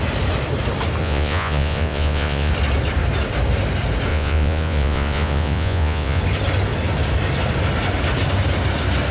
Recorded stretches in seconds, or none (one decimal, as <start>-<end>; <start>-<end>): 0.0-1.0; 2.5-4.1; 6.2-9.1